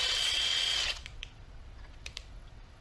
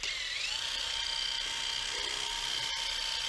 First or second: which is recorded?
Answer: second